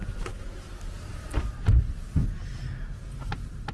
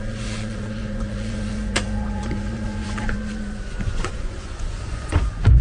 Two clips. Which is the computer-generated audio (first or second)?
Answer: second